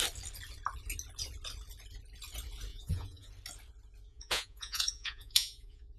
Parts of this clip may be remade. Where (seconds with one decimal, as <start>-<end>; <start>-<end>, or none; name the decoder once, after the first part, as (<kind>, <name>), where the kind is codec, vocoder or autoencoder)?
2.7-3.3 (vocoder, Vocos); 4.1-6.0